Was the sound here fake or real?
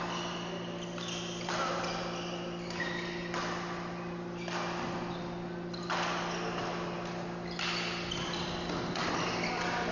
real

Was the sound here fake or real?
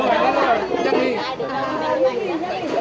real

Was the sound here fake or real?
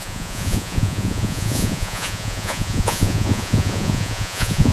fake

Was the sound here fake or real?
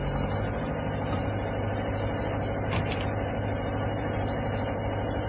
real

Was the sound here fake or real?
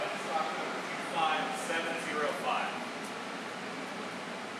real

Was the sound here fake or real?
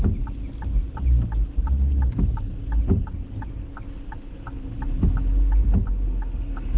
real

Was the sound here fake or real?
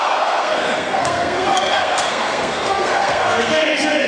fake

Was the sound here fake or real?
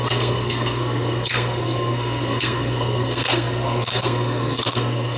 fake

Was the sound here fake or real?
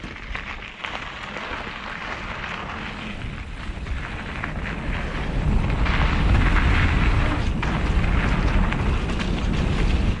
real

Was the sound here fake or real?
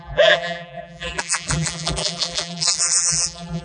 fake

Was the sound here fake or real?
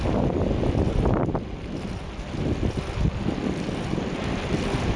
real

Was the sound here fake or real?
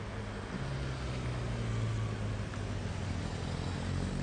real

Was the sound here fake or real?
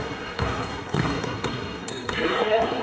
fake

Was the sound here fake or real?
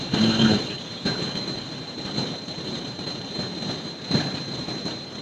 fake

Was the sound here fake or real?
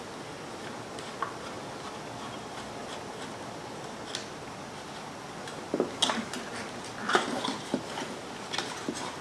real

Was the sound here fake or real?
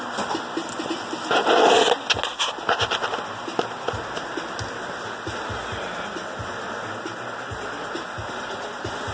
real